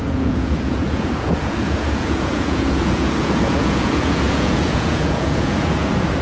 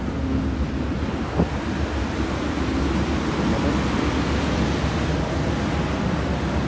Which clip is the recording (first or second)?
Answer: second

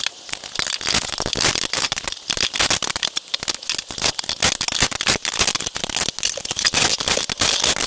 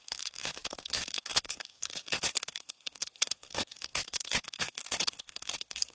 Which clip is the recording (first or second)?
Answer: first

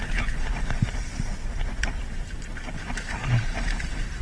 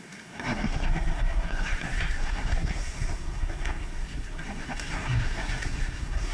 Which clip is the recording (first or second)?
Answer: first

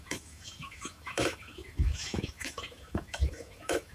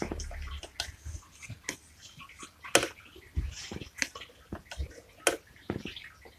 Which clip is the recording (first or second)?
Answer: second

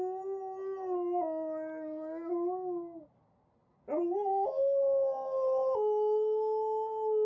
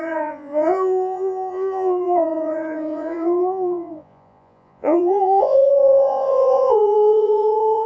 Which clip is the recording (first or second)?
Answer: first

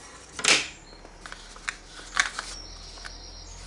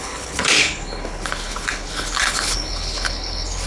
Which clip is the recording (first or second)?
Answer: first